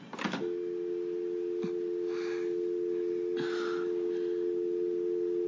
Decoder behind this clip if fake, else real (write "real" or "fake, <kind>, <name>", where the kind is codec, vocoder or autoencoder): real